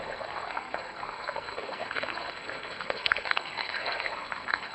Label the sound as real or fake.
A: fake